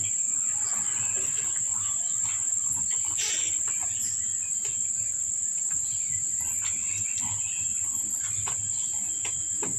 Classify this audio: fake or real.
fake